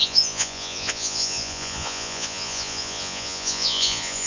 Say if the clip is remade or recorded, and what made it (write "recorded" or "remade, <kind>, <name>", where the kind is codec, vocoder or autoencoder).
remade, vocoder, Vocos